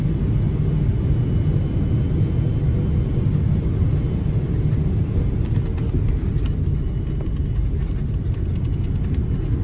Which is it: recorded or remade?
recorded